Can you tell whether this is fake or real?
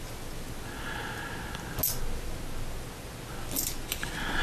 real